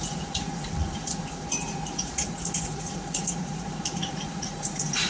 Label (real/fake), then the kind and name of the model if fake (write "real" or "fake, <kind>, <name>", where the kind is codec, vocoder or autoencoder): fake, vocoder, Vocos